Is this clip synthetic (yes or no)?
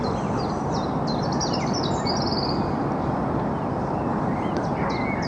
no